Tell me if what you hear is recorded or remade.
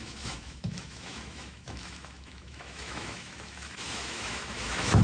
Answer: remade